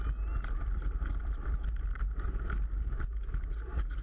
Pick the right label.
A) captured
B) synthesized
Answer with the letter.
A